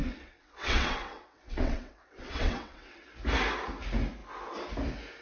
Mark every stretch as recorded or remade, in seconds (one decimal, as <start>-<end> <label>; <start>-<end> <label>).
0.0-3.1 remade; 3.1-5.2 recorded